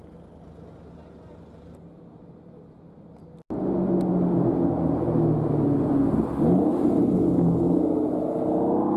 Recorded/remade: recorded